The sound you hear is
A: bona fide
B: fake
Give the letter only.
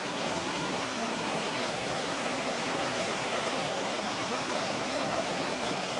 B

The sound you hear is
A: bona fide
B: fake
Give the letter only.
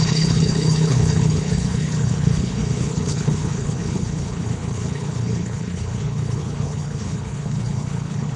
B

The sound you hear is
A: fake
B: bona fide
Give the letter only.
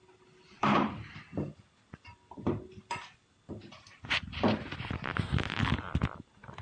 A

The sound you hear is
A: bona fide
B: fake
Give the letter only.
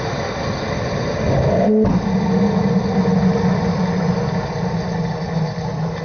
A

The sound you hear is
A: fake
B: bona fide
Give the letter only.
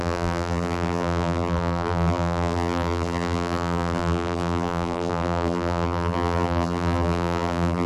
A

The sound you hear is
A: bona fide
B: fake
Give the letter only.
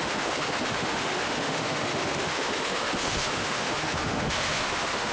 B